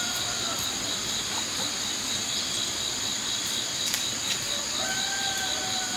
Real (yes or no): yes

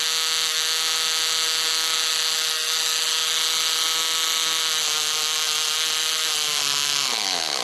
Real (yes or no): no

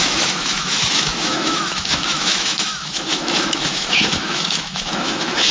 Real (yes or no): no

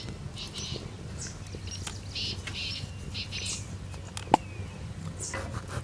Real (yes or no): yes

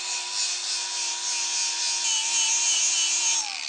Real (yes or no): yes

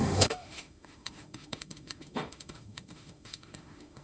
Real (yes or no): no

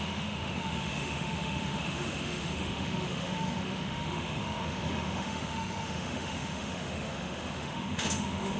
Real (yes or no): no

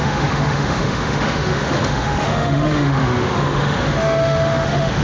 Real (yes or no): no